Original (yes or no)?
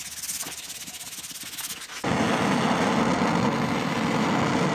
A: yes